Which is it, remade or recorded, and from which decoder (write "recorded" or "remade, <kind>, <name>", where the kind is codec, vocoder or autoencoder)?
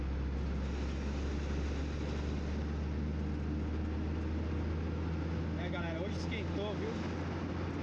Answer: recorded